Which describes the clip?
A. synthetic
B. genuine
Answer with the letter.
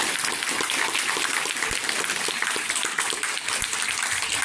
B